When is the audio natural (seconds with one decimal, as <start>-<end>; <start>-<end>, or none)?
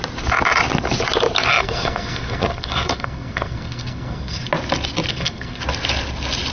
0.0-1.5; 4.5-5.1; 5.6-6.5